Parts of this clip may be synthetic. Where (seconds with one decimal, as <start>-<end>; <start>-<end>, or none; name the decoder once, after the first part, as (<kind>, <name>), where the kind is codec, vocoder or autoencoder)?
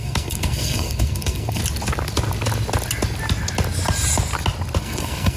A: 0.0-1.6 (codec, SNAC); 4.8-5.4